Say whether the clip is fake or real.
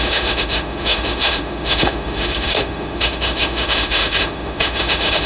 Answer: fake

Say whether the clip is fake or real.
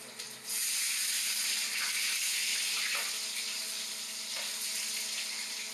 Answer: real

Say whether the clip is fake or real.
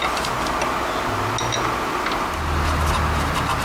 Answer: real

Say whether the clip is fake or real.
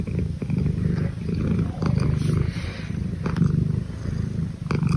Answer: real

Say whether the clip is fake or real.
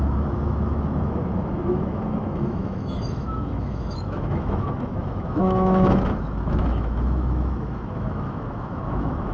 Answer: fake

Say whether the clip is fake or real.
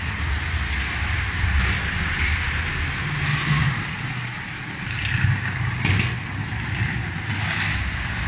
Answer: real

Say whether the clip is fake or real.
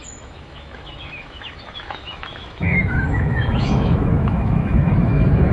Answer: fake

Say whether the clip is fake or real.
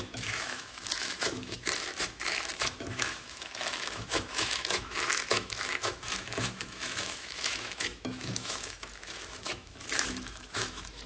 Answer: fake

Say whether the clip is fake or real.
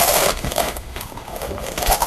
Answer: fake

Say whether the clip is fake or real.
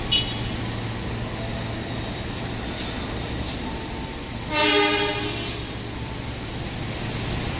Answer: real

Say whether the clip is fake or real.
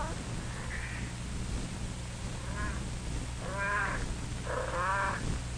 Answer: real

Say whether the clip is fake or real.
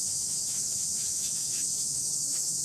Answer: fake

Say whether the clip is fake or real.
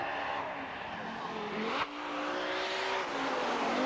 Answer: real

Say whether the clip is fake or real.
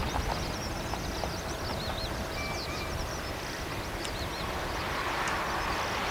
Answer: real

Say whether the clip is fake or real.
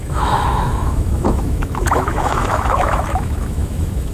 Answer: fake